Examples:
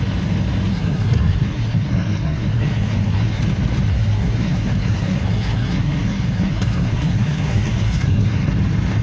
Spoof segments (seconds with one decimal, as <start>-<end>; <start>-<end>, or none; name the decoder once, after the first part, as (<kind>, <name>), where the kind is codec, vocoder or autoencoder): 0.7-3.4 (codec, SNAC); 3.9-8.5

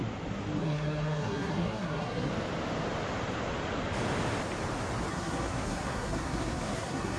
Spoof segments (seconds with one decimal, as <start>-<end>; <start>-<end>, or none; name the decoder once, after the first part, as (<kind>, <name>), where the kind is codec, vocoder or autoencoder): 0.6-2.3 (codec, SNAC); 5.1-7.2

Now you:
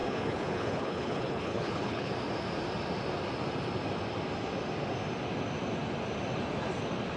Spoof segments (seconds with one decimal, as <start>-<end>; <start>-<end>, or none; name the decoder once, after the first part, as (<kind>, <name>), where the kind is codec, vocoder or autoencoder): 0.0-2.1 (codec, HILCodec)

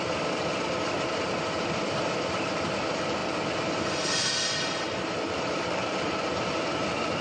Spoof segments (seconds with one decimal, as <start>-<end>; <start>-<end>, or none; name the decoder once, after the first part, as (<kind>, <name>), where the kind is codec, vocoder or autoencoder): none

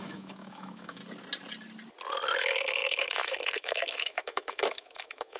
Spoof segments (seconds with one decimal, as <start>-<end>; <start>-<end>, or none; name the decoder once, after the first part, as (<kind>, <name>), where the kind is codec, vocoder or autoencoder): 0.0-1.0 (autoencoder, DAC-VAE); 2.4-5.4

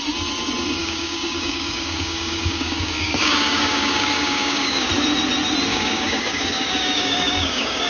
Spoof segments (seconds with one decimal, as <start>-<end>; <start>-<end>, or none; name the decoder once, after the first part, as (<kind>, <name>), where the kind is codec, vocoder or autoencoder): 0.8-4.9 (codec, DAC); 5.7-7.9

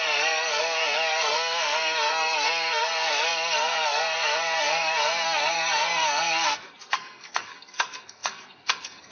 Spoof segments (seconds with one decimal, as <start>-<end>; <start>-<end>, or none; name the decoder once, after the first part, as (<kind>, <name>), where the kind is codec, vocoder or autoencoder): 0.0-9.1 (codec, SNAC)

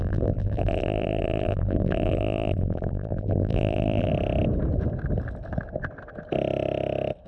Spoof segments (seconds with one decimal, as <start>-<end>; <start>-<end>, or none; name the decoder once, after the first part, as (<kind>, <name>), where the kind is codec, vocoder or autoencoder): 0.0-4.1 (vocoder, BigVGAN v2)